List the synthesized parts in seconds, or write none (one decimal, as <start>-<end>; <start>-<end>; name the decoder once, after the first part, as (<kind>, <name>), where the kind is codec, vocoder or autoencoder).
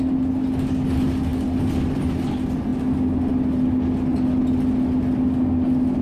none